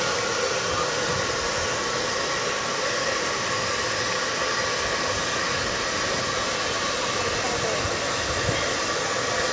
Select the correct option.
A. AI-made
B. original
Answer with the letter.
B